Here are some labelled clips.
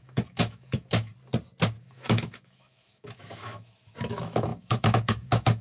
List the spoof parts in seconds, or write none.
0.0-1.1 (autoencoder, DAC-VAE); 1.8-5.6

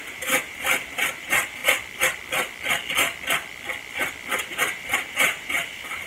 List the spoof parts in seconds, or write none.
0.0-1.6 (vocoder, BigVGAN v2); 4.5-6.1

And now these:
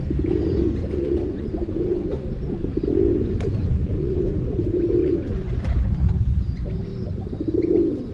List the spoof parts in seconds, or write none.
0.8-2.3 (vocoder, Vocos); 3.1-4.2; 5.0-5.6

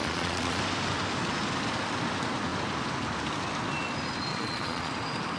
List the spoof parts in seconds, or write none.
0.0-0.6 (vocoder, Vocos); 4.3-4.9

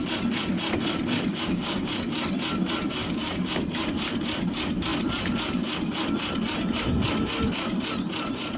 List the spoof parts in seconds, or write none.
1.3-1.9 (codec, DAC); 3.0-3.5